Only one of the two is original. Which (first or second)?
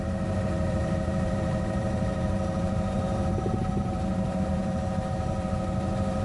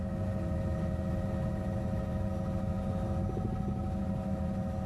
second